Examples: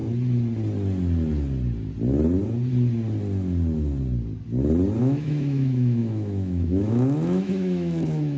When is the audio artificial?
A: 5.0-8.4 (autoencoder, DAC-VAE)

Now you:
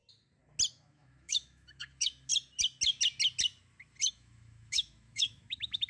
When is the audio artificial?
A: 0.7-2.3 (autoencoder, DAC-VAE); 4.1-5.9

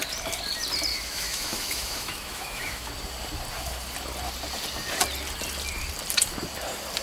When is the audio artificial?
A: 0.9-2.9 (autoencoder, DAC-VAE)

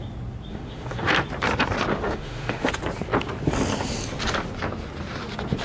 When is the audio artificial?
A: 0.5-1.1 (autoencoder, DAC-VAE); 1.9-2.7

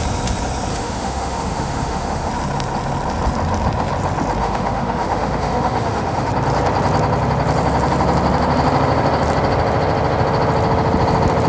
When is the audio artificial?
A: 0.7-2.3 (autoencoder, DAC-VAE); 4.4-6.3

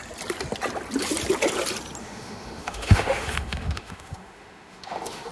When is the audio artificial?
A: 2.0-5.3 (autoencoder, DAC-VAE)

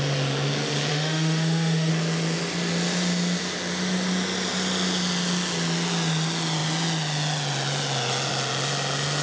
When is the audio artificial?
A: 0.9-1.9 (autoencoder, DAC-VAE)